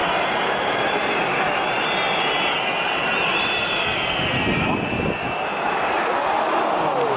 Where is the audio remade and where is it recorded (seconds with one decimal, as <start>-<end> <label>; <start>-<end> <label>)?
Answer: 0.0-1.4 remade; 1.4-3.2 recorded; 3.2-3.8 remade; 3.8-7.2 recorded